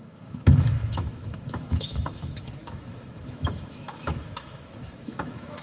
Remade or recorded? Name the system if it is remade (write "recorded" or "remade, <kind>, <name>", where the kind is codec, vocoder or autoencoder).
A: remade, autoencoder, DAC-VAE